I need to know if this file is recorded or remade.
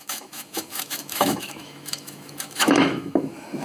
remade